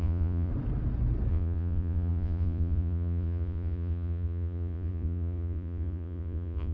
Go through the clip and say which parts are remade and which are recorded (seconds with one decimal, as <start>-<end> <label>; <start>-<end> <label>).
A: 0.0-0.5 remade; 0.5-1.3 recorded; 1.3-6.7 remade